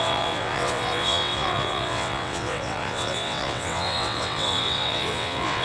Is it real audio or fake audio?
fake